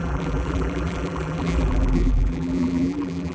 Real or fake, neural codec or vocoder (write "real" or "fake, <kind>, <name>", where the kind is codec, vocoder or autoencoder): fake, vocoder, BigVGAN v2